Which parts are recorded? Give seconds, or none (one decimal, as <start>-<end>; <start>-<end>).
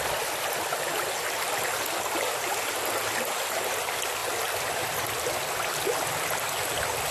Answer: 0.0-7.1